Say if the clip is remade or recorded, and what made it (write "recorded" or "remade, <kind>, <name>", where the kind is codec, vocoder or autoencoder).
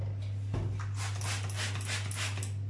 recorded